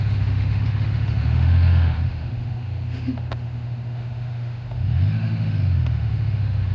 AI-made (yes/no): yes